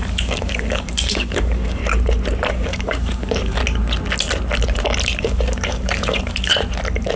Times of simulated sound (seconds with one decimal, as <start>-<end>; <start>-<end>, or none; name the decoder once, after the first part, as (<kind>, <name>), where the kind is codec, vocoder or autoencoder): 0.0-1.8 (codec, DAC); 2.5-3.6; 5.2-6.5